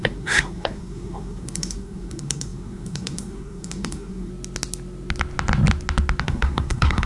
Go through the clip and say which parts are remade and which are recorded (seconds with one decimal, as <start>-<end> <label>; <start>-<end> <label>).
0.0-4.3 remade; 4.3-6.2 recorded; 6.2-7.1 remade